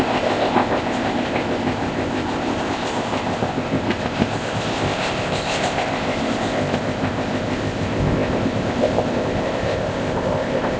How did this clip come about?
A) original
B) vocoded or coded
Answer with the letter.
B